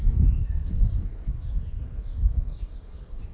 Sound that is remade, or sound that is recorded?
remade